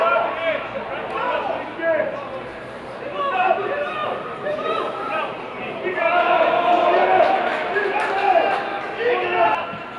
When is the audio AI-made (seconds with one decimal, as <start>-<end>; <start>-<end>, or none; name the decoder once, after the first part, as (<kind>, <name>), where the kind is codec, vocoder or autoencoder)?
2.5-3.0 (vocoder, BigVGAN v2); 4.0-6.7